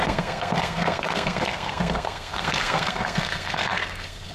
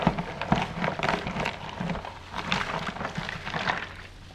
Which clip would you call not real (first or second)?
first